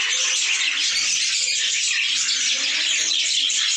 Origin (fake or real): real